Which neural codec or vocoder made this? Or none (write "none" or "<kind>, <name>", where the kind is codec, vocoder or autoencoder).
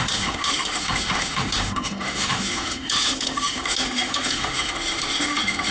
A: autoencoder, DAC-VAE